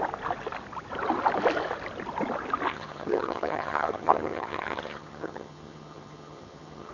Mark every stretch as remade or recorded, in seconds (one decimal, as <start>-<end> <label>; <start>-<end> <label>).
0.0-2.7 recorded; 2.7-6.9 remade